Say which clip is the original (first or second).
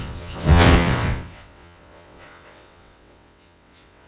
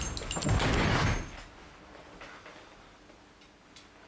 second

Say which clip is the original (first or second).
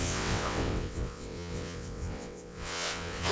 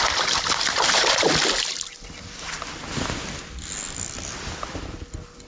second